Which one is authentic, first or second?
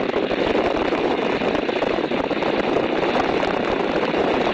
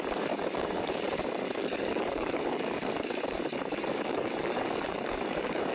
first